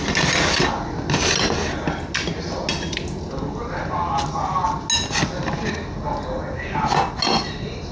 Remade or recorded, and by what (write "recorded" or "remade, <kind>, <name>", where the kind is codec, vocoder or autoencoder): recorded